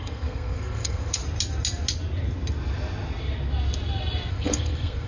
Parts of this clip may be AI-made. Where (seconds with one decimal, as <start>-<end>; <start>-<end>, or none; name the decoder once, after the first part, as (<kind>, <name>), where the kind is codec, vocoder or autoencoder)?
0.0-1.2 (codec, SNAC); 4.3-5.1

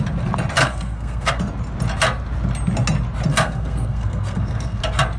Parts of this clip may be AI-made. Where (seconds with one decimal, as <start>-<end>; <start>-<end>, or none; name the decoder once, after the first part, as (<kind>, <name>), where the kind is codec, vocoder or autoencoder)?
0.6-1.4 (codec, SNAC); 3.3-4.8

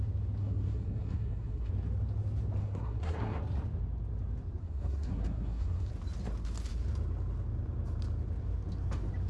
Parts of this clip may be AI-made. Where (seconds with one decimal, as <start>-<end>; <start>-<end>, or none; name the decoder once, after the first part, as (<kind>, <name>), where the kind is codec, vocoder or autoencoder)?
0.4-1.7 (codec, SNAC); 2.6-3.4; 4.6-5.9

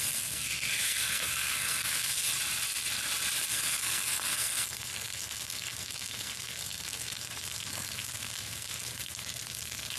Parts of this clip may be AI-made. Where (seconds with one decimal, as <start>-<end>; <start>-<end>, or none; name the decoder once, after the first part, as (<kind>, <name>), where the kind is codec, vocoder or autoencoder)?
0.0-2.3 (codec, SNAC); 3.5-10.0

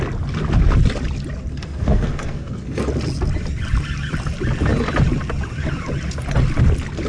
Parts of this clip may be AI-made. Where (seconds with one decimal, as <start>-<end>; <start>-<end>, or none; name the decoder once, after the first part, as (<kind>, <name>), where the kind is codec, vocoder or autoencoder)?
1.5-2.9 (codec, SNAC)

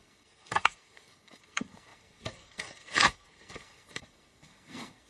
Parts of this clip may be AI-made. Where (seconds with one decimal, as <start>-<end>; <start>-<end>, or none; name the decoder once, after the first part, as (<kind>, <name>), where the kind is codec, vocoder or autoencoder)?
0.0-5.1 (codec, SNAC)

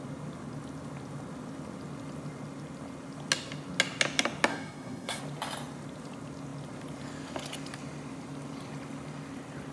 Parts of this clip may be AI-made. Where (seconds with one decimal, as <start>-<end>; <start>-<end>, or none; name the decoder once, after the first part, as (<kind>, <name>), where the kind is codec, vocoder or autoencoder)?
4.5-5.2 (codec, SNAC)